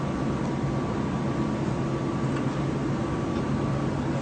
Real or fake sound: real